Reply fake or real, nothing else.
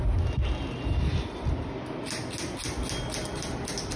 real